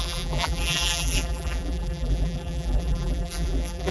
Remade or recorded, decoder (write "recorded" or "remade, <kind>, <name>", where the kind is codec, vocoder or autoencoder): remade, vocoder, BigVGAN v2